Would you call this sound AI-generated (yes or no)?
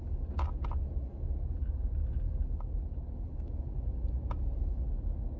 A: no